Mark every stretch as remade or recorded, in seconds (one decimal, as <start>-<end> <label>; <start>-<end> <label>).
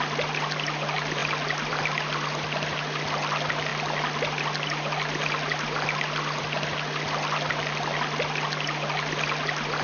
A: 0.0-9.8 recorded